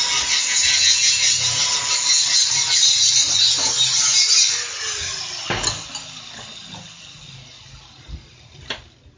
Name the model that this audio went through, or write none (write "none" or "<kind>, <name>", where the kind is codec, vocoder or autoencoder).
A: none